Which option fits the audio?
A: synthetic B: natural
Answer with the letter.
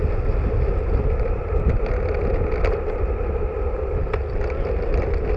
B